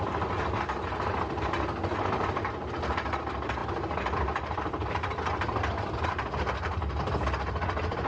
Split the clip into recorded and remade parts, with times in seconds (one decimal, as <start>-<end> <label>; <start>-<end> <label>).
0.0-8.1 recorded